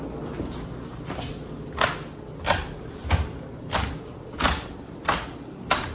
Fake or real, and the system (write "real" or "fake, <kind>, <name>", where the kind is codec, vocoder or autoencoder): real